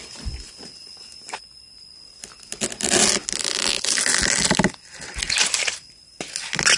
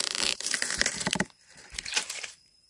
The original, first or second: first